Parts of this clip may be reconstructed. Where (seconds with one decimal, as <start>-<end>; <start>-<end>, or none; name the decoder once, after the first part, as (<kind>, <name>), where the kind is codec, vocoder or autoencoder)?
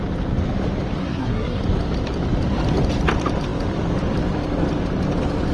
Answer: 1.0-1.6 (codec, SNAC)